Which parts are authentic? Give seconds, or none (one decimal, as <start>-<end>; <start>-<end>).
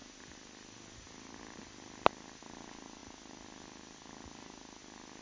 0.0-5.2